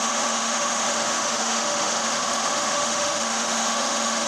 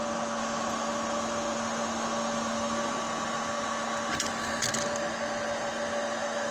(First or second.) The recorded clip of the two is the second